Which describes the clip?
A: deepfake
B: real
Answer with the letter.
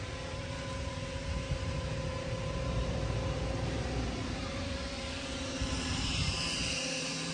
A